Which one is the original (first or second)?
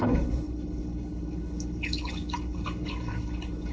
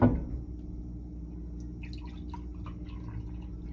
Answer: second